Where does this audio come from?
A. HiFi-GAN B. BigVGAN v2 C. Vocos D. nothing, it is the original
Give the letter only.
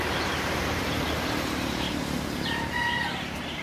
B